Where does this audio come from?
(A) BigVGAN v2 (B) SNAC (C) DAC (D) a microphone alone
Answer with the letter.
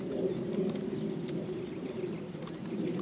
D